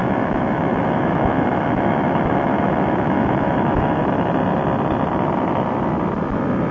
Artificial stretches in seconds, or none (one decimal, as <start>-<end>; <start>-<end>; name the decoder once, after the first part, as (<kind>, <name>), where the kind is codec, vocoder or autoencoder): 0.0-4.0 (autoencoder, DAC-VAE)